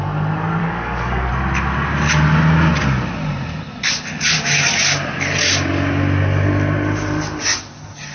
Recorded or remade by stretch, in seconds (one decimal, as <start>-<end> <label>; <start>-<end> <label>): 0.0-0.6 recorded; 0.6-1.3 remade; 1.3-8.1 recorded